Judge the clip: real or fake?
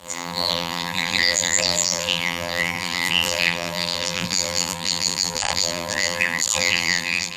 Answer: fake